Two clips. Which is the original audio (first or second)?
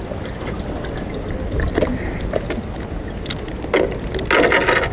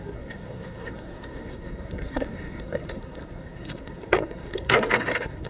first